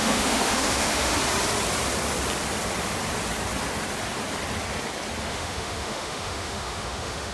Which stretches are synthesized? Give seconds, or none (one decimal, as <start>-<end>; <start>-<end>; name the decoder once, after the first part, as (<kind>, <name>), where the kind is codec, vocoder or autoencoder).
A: 0.0-1.1 (autoencoder, DAC-VAE); 5.2-7.3